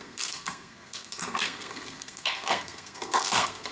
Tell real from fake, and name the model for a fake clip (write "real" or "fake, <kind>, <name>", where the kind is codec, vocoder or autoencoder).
fake, codec, SNAC